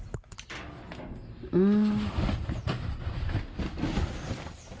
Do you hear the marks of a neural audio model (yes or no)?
no